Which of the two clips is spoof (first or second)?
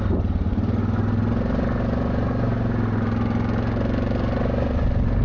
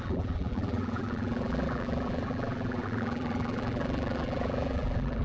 second